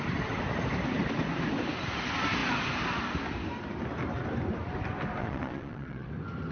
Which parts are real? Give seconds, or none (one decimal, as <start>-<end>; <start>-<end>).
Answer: 0.0-5.2; 6.1-6.5